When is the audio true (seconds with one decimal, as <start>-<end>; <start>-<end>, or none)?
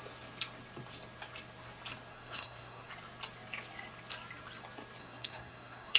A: 0.0-2.1; 2.9-5.0